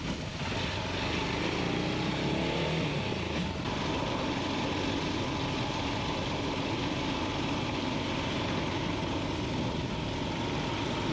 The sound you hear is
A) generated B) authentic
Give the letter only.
B